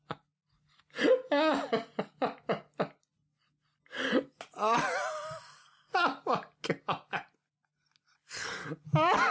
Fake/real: real